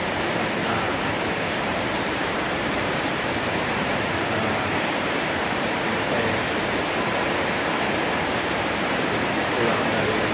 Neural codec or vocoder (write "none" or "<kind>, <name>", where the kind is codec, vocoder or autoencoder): vocoder, BigVGAN v2